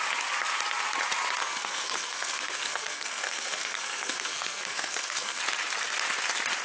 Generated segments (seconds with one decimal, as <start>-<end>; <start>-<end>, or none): 1.4-5.4